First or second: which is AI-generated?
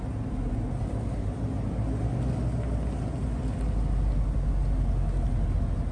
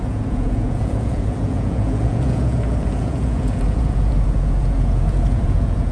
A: second